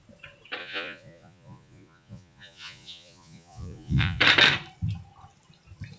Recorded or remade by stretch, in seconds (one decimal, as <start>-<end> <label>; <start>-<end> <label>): 0.0-0.6 recorded; 0.6-4.2 remade; 4.2-6.0 recorded